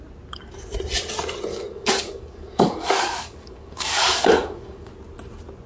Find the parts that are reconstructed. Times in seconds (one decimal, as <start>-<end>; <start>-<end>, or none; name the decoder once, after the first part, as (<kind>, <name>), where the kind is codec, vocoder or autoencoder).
1.5-4.9 (codec, DAC)